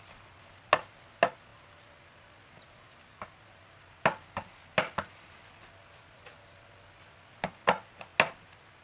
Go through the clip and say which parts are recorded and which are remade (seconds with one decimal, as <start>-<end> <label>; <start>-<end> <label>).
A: 0.0-8.8 recorded